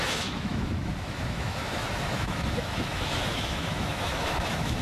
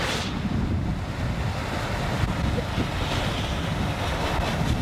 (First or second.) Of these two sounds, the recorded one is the second